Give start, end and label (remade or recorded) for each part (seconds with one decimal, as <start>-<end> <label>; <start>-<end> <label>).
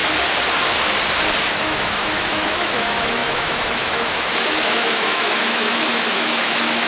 0.0-1.5 recorded; 1.5-6.9 remade